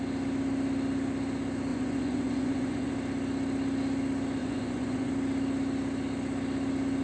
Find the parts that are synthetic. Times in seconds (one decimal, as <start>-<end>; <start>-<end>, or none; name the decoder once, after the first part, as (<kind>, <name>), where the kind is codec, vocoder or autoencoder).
1.7-2.9 (vocoder, Vocos); 4.4-5.1